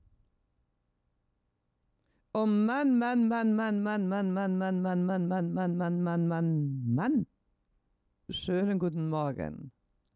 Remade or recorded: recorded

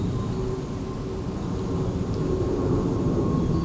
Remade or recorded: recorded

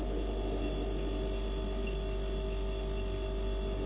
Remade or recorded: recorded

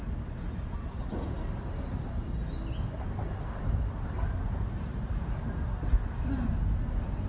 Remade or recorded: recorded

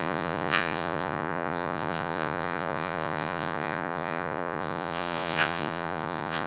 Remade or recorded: remade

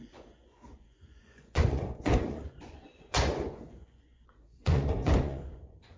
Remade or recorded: remade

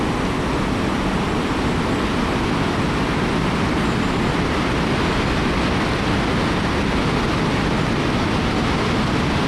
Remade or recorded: recorded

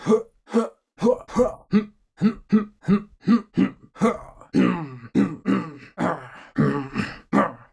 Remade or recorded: recorded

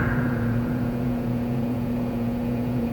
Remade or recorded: remade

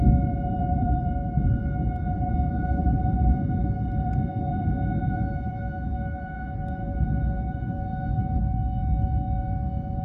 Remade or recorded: remade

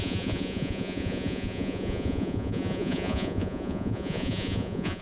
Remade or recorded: remade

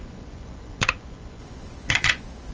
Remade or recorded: remade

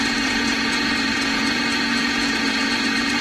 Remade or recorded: remade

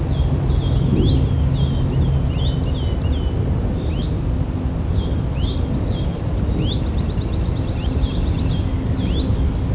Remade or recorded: recorded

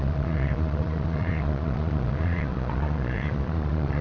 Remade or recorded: remade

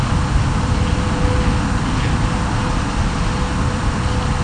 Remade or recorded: recorded